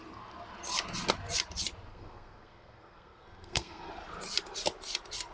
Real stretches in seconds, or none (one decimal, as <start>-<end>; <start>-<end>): 0.0-1.9; 3.9-5.3